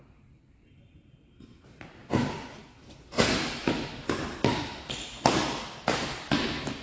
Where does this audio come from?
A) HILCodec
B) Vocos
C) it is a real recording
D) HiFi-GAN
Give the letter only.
C